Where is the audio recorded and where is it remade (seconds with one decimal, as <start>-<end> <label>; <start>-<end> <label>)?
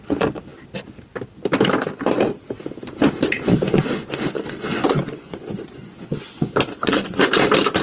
0.0-3.5 recorded; 3.5-7.3 remade; 7.3-7.8 recorded